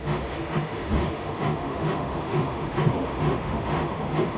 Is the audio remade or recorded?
remade